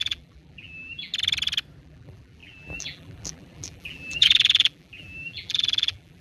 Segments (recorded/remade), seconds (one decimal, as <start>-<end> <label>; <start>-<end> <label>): 0.0-1.1 remade; 1.1-1.8 recorded; 1.8-6.2 remade

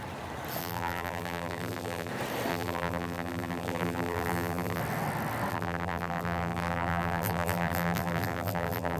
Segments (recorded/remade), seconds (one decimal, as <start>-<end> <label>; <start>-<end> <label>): 0.0-0.6 recorded; 0.6-2.1 remade; 2.1-2.5 recorded; 2.5-4.8 remade; 4.8-5.5 recorded; 5.5-9.0 remade

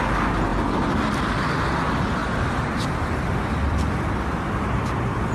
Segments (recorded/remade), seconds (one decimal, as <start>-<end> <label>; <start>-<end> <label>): 0.0-0.5 recorded; 0.5-1.3 remade; 1.3-2.2 recorded; 2.2-5.3 remade

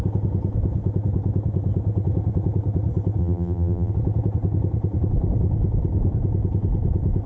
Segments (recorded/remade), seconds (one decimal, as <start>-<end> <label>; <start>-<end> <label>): 0.0-3.2 recorded; 3.2-3.9 remade; 3.9-7.3 recorded

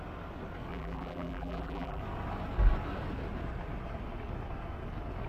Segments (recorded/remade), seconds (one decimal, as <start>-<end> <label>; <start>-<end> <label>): 0.0-0.7 recorded; 0.7-2.0 remade; 2.0-5.3 recorded